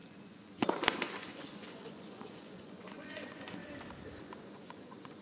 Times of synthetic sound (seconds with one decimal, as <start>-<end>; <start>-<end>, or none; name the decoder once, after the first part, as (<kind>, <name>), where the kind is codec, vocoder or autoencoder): 0.0-3.6 (vocoder, Vocos); 4.2-5.2